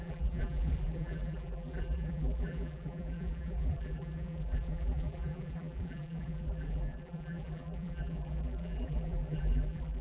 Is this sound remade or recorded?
remade